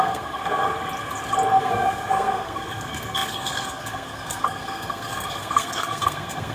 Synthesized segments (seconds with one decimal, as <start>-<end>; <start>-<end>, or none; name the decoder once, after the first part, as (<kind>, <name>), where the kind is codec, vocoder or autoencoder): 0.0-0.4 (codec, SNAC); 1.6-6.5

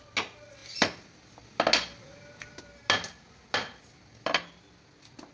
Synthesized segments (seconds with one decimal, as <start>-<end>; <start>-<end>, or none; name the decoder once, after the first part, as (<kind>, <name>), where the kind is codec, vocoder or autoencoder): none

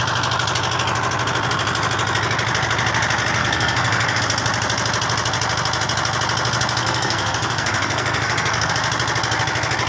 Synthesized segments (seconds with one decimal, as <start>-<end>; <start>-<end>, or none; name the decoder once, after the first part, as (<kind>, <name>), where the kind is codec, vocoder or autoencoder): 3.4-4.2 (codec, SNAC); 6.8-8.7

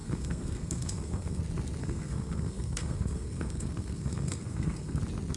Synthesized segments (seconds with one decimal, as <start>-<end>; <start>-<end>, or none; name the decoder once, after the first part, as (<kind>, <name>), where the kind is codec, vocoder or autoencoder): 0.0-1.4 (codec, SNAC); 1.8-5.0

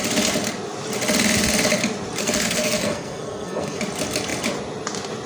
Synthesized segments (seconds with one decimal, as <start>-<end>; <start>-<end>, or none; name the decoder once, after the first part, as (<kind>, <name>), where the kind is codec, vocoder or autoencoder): 2.2-3.8 (codec, SNAC)

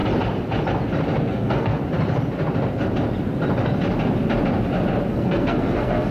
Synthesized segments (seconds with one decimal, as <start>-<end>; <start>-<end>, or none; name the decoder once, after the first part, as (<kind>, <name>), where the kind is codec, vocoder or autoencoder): 1.2-1.8 (codec, SNAC); 5.1-6.1

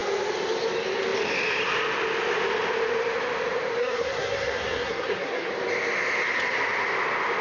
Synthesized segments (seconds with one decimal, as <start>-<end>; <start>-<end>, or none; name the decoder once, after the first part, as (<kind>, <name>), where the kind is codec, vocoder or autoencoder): 3.8-5.5 (codec, SNAC)

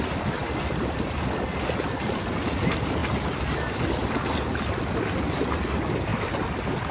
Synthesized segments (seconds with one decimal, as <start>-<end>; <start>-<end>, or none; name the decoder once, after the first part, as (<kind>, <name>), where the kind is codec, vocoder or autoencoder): none